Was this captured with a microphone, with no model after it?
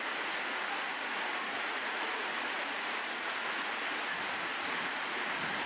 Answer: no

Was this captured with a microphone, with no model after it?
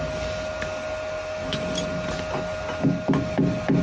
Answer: yes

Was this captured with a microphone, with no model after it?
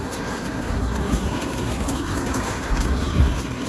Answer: no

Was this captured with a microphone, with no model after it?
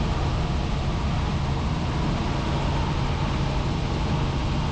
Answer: yes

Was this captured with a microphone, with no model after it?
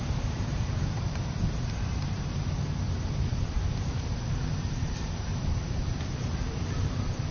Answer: no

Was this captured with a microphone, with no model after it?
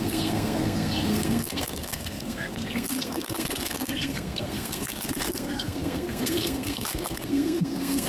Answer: no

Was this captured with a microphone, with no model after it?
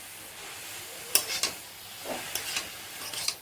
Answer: yes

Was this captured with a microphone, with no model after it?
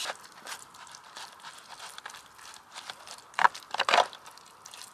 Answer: yes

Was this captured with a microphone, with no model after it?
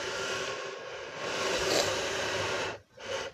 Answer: no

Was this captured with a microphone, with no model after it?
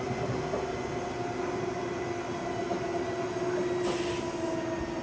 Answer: yes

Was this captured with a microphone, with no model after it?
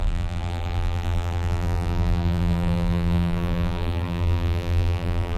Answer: no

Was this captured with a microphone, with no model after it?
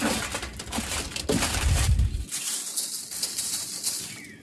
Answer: yes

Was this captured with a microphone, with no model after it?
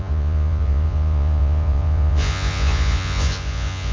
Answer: no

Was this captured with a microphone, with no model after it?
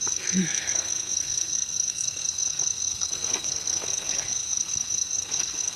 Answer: no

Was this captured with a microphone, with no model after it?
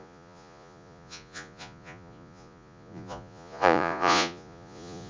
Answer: no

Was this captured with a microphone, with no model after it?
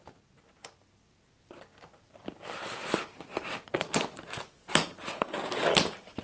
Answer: no